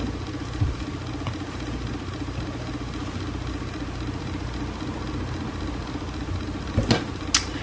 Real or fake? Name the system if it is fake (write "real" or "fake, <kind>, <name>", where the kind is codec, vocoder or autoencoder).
real